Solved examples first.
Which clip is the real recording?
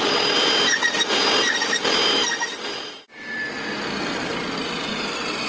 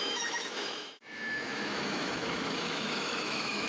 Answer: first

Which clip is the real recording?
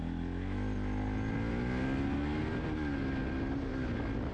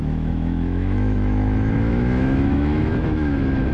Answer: first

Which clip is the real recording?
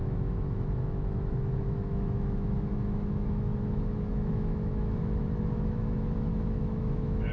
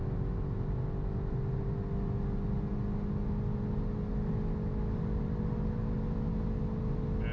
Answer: second